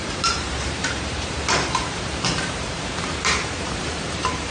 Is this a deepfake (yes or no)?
yes